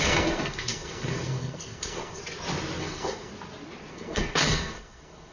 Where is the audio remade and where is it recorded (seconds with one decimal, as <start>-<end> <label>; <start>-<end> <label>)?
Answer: 0.0-2.2 remade; 2.2-2.8 recorded; 2.8-3.3 remade; 3.3-3.9 recorded; 3.9-5.3 remade